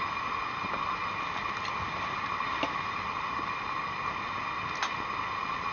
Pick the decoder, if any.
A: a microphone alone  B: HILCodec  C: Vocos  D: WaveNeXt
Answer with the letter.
A